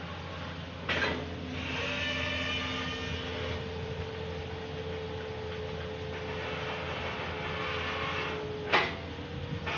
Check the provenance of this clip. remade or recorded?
recorded